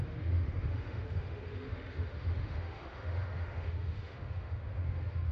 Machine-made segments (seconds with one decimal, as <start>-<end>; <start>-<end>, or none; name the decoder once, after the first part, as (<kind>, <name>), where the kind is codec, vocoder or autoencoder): 0.0-5.3 (autoencoder, DAC-VAE)